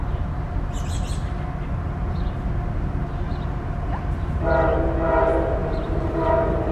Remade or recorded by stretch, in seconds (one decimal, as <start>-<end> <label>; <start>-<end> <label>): 0.0-5.6 recorded; 5.6-6.3 remade; 6.3-6.7 recorded